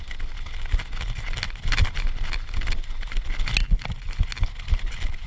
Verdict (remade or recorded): recorded